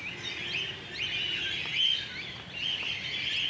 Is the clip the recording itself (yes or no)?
yes